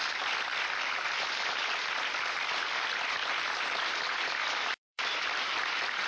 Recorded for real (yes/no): no